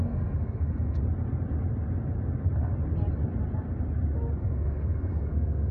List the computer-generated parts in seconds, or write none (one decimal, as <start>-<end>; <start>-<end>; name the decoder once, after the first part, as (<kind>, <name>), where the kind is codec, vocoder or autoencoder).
0.0-1.0 (codec, SNAC); 4.4-5.7